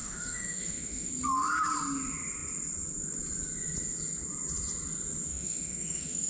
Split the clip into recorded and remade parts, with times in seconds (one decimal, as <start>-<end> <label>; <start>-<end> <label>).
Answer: 0.0-1.1 remade; 1.1-5.3 recorded; 5.3-6.3 remade